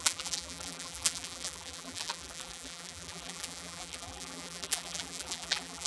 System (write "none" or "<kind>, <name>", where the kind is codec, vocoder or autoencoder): vocoder, BigVGAN v2